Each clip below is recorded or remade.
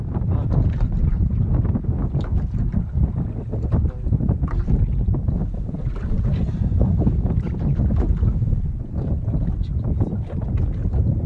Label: recorded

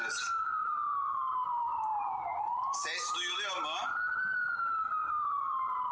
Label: recorded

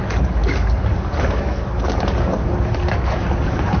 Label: remade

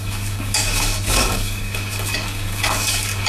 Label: remade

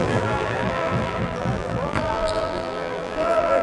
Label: remade